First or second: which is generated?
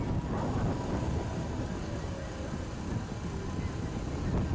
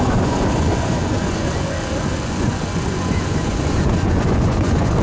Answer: second